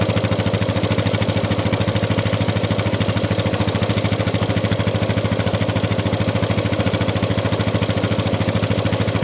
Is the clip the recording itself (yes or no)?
yes